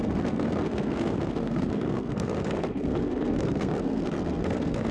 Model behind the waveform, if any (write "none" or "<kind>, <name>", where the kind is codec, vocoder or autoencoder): codec, SNAC